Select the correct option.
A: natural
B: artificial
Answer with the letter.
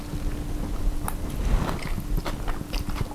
A